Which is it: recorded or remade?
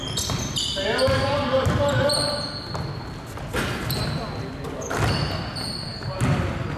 recorded